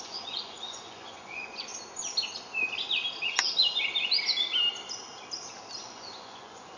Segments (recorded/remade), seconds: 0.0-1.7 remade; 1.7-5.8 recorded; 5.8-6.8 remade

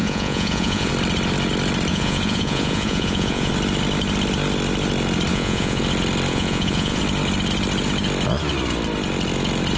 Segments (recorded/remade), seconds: 0.0-0.9 remade; 0.9-1.9 recorded; 1.9-3.5 remade; 3.5-5.3 recorded; 5.3-5.8 remade; 5.8-6.3 recorded; 6.3-7.0 remade; 7.0-9.8 recorded

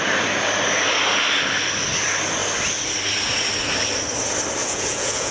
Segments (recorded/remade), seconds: 0.0-4.6 recorded; 4.6-5.3 remade

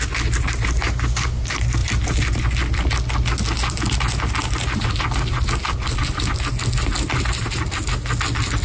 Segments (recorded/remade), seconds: 0.0-8.6 recorded

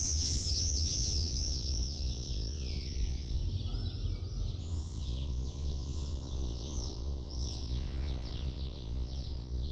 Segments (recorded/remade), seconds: 0.0-3.4 remade; 3.4-4.6 recorded; 4.6-9.7 remade

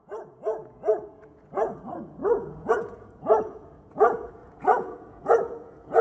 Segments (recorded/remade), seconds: 0.0-6.0 remade

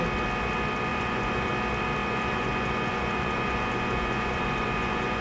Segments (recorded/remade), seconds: 0.0-0.9 recorded; 0.9-1.5 remade; 1.5-2.0 recorded; 2.0-5.2 remade